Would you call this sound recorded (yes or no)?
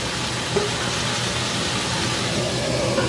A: yes